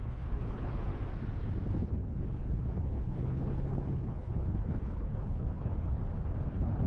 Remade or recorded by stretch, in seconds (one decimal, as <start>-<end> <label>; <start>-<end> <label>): 0.0-0.9 remade; 0.9-1.7 recorded; 1.7-6.0 remade; 6.0-6.5 recorded; 6.5-6.9 remade